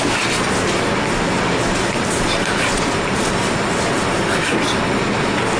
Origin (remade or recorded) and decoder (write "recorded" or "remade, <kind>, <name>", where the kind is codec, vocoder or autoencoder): recorded